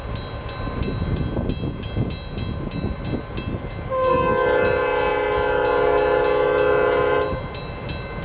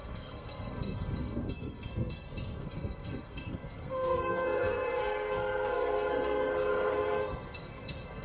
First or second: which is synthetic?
second